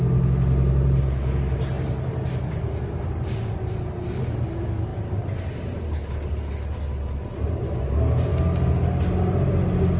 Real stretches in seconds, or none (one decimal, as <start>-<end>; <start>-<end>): 0.0-10.0